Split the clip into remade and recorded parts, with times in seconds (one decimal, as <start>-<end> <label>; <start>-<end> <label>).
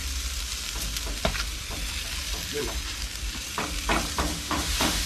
0.0-4.3 recorded; 4.3-5.1 remade